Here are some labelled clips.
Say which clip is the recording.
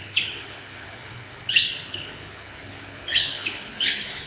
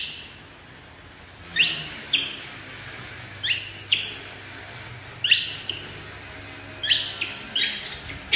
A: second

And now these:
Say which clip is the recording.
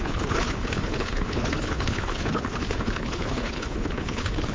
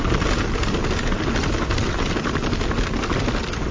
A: second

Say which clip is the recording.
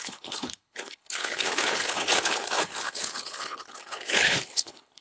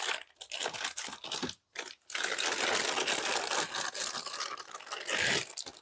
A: second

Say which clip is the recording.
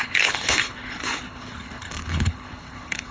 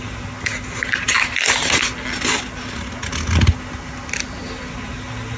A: second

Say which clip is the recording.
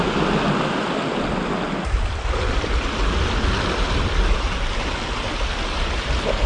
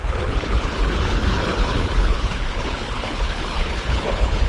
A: first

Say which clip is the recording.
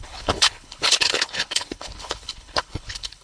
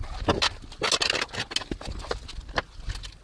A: second